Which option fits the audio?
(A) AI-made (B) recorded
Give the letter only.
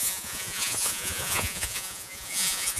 A